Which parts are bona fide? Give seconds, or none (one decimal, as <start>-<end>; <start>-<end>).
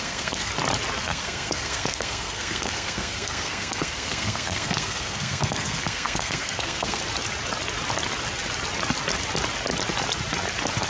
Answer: 0.5-1.0; 7.0-10.9